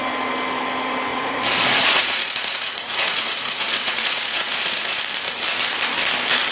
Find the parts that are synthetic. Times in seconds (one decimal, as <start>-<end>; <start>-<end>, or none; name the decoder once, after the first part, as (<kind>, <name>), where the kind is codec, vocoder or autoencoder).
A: 1.1-5.0 (vocoder, Vocos)